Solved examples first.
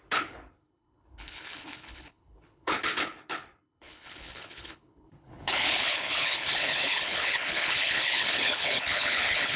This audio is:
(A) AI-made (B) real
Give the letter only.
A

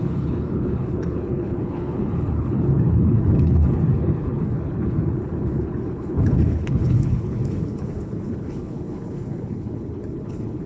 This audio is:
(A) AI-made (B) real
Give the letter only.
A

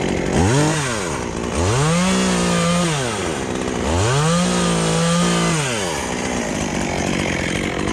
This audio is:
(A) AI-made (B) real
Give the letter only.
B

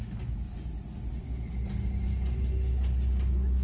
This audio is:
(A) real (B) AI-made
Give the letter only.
A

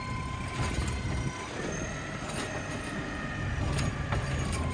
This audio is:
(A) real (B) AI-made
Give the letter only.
A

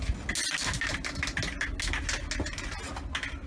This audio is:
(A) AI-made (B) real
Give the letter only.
B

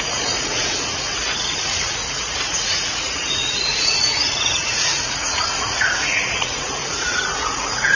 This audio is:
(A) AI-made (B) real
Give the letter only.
A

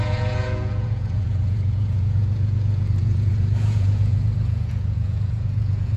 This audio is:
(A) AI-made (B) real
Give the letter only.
A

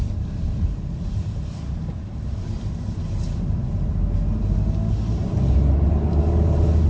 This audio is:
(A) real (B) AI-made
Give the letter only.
A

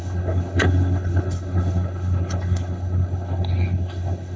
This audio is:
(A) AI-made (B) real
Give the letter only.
A